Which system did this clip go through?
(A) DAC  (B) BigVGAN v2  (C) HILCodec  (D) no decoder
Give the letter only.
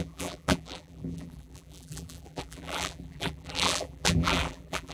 B